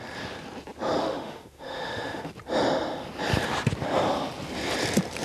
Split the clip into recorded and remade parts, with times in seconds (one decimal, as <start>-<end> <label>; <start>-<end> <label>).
0.0-1.0 recorded; 1.0-2.3 remade; 2.3-5.2 recorded